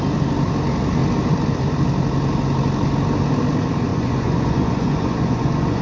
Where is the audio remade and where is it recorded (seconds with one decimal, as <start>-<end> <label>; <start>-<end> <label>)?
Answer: 0.0-3.9 recorded; 3.9-5.8 remade